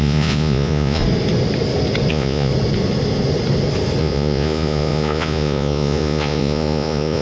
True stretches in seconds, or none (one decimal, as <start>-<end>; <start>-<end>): 1.0-2.1; 2.5-4.0